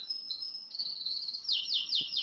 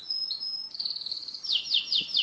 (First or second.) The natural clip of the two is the second